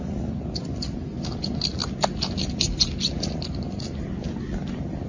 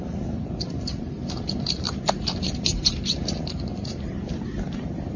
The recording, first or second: first